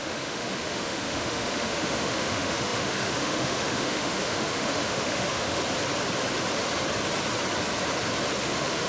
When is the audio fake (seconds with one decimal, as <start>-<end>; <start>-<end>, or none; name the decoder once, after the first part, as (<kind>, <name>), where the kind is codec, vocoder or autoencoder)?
0.0-5.6 (autoencoder, DAC-VAE); 8.4-8.9